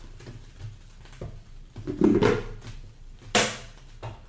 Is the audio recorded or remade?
recorded